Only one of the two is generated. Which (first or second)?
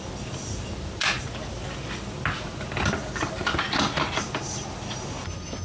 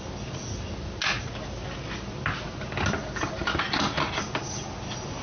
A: first